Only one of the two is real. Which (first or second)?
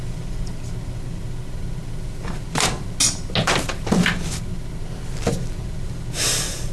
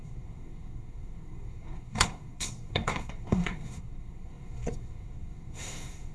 first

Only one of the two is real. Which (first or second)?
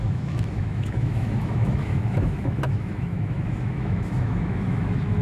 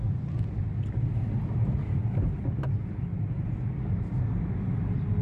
second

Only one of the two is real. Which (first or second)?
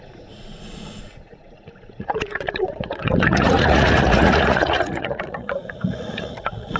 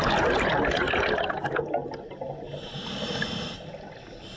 second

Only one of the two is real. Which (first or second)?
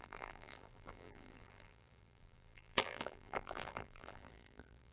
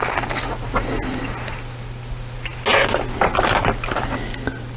second